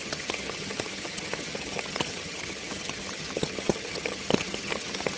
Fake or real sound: fake